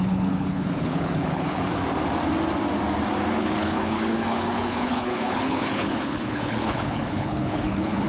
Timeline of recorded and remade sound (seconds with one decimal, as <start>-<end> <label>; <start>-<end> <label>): 0.0-1.7 remade; 1.7-3.3 recorded; 3.3-8.1 remade